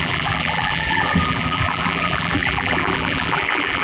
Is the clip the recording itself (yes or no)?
no